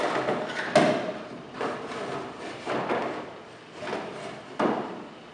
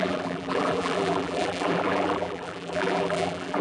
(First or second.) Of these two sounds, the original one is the first